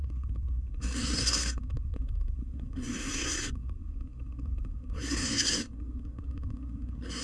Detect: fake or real fake